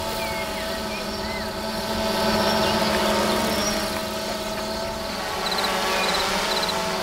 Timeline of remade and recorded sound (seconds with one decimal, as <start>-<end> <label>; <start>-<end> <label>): 0.0-7.0 recorded